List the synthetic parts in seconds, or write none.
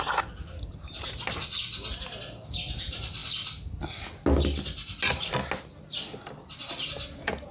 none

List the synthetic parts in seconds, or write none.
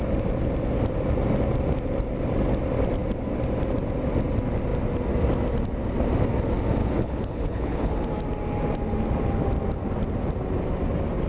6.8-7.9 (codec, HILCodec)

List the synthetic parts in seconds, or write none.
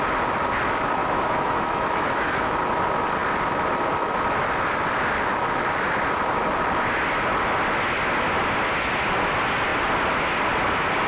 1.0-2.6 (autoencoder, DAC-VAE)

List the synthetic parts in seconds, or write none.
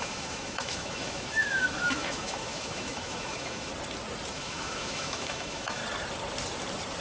0.0-3.7 (autoencoder, DAC-VAE); 4.3-5.8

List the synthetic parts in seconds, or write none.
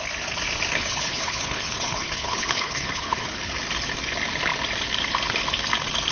0.7-3.5 (codec, HILCodec)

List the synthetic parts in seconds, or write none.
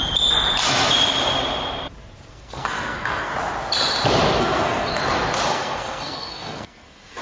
2.3-3.3 (codec, SNAC); 4.4-5.0; 5.5-7.2